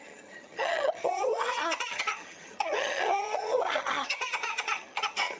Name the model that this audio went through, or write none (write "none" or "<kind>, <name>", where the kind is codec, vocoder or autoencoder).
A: vocoder, HiFi-GAN